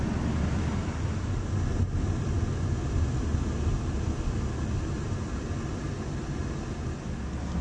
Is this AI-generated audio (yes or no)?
no